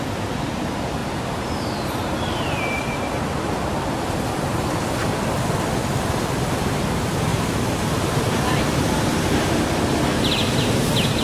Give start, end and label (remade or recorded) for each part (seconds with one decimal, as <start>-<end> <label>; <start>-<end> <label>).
0.0-1.0 recorded; 1.0-3.5 remade; 3.5-7.3 recorded; 7.3-8.8 remade; 8.8-11.2 recorded